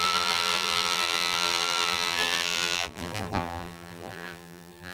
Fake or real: fake